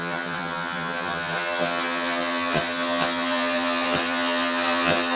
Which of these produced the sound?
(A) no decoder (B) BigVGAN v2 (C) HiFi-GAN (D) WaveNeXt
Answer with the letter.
C